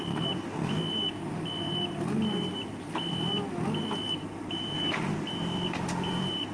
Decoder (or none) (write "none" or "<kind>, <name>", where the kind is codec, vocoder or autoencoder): none